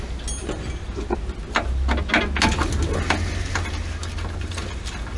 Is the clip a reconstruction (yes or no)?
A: no